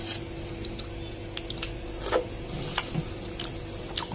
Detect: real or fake real